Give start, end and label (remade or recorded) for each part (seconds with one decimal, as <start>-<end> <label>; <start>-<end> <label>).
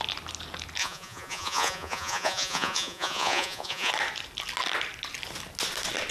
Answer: 0.0-0.8 recorded; 0.8-3.9 remade; 3.9-6.1 recorded